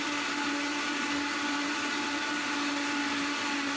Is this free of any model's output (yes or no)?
yes